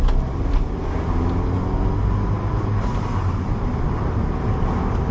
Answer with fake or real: real